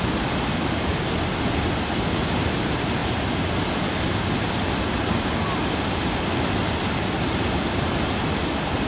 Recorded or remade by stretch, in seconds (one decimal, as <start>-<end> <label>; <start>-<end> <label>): 0.0-8.9 recorded